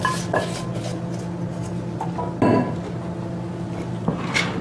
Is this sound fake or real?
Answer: real